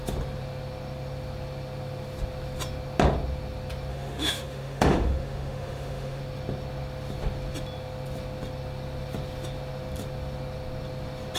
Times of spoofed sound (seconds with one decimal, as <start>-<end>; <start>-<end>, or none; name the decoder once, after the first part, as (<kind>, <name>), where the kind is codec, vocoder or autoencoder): 3.9-6.2 (autoencoder, DAC-VAE)